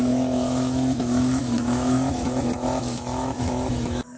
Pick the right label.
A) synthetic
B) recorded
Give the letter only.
A